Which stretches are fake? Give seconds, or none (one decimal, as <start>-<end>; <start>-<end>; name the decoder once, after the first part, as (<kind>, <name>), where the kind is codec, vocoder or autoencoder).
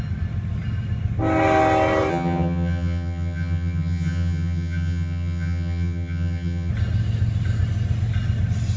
2.1-6.7 (vocoder, HiFi-GAN)